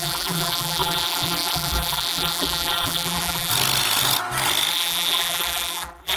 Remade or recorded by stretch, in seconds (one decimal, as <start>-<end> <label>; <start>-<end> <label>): 0.0-3.5 remade; 3.5-4.7 recorded; 4.7-6.2 remade